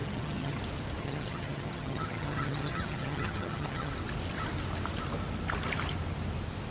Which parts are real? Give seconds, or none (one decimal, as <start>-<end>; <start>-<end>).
0.6-1.0; 3.9-6.7